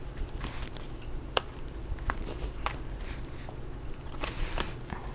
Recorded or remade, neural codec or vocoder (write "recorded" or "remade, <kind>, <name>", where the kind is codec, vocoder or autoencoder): recorded